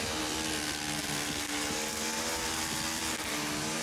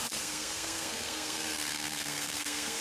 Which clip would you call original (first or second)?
first